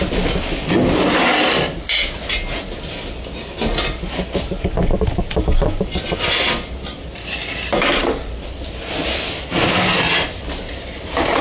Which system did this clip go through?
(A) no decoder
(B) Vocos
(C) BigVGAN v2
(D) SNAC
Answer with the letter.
A